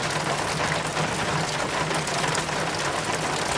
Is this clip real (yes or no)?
yes